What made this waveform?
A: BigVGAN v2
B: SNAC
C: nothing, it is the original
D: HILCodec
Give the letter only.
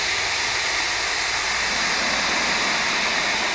C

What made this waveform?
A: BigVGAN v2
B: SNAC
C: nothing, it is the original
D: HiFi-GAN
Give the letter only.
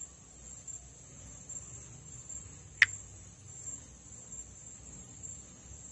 C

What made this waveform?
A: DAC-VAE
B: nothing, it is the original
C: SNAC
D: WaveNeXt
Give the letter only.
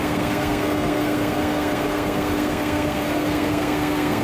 C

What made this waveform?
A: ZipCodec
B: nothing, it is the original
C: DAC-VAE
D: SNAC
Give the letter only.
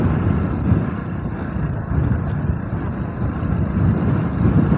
B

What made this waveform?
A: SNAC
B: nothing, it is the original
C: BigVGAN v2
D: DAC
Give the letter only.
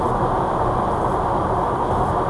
B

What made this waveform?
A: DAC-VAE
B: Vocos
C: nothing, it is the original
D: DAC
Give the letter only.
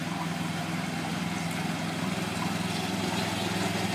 C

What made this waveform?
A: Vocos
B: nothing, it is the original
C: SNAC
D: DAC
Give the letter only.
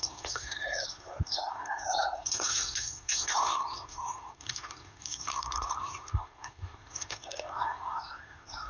C